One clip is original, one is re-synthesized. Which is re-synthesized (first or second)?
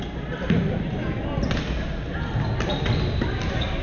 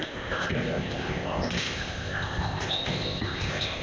second